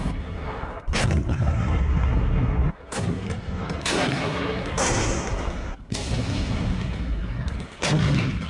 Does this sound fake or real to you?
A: fake